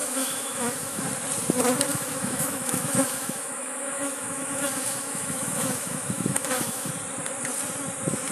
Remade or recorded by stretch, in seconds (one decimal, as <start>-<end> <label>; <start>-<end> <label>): 0.0-1.0 remade; 1.0-1.9 recorded; 1.9-6.9 remade; 6.9-8.3 recorded